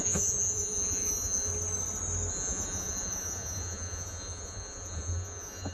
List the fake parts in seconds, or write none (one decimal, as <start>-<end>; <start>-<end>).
0.0-1.5; 2.3-5.7